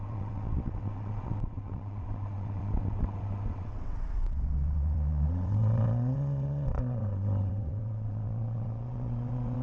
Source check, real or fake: fake